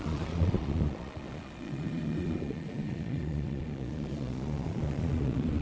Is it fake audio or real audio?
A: fake